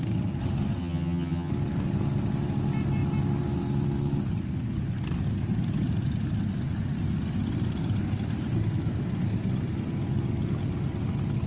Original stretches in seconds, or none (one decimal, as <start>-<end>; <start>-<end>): 0.0-0.8; 1.5-11.5